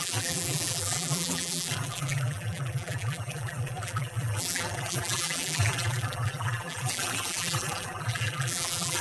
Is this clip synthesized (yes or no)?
yes